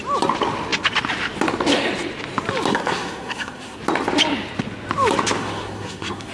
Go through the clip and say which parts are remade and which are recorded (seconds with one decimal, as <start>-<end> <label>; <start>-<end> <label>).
0.0-2.7 recorded; 2.7-3.8 remade; 3.8-5.4 recorded; 5.4-6.3 remade

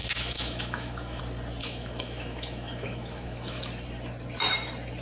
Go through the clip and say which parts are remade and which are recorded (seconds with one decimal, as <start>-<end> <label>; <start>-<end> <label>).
0.0-1.2 remade; 1.2-1.6 recorded; 1.6-3.6 remade; 3.6-5.0 recorded

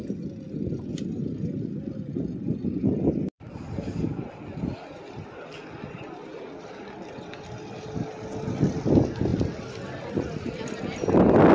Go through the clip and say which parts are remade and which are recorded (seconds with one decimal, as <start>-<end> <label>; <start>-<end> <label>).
0.0-11.5 recorded

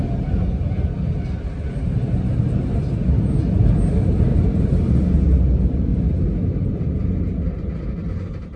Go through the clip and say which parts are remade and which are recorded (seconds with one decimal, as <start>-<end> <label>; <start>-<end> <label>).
0.0-4.3 recorded; 4.3-5.0 remade; 5.0-5.9 recorded; 5.9-6.8 remade; 6.8-8.6 recorded

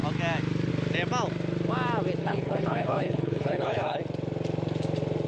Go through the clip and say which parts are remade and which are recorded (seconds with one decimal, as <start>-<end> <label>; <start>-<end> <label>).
0.0-2.2 recorded; 2.2-4.0 remade; 4.0-5.3 recorded